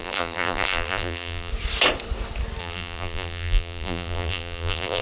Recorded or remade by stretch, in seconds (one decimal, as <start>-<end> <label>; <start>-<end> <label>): 0.0-1.5 remade; 1.5-2.6 recorded; 2.6-5.0 remade